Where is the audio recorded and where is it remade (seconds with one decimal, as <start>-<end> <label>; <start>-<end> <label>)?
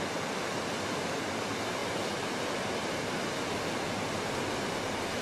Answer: 0.0-5.2 recorded